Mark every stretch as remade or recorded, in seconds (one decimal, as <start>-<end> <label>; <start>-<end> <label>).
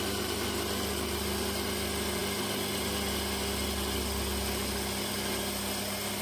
0.0-6.2 recorded